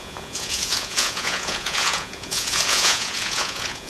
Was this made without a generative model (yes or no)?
no